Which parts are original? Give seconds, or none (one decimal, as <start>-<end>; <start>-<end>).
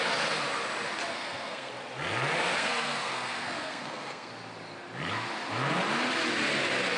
0.0-1.1; 1.7-2.6; 4.3-7.0